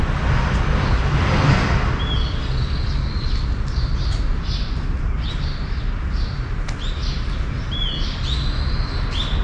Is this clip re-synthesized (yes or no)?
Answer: no